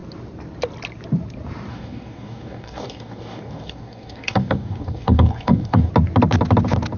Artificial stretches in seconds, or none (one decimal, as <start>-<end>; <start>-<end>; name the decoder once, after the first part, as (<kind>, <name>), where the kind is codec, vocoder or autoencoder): 1.7-5.9 (codec, DAC)